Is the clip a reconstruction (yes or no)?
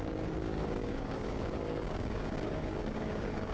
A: yes